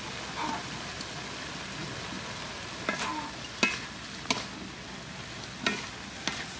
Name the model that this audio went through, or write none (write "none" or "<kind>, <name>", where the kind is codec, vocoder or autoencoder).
none